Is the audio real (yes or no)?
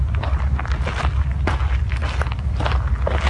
yes